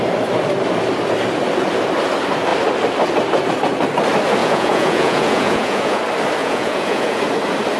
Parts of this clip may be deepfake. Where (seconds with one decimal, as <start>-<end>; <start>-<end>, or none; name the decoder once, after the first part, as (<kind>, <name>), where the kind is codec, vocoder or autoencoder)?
4.4-6.0 (vocoder, Vocos); 6.4-7.2